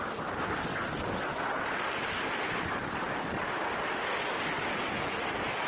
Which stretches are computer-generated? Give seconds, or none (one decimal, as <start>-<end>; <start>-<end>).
0.7-3.6